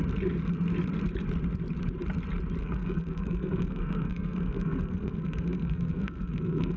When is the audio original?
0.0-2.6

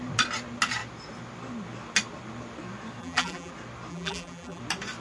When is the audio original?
0.0-3.0; 3.5-3.9; 4.6-5.0

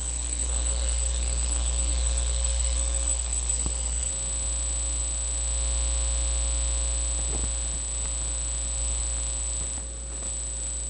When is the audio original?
4.1-10.9

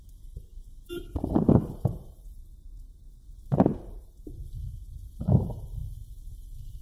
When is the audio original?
5.8-6.8